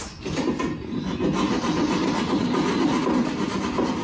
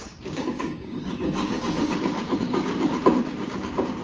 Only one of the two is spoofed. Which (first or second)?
second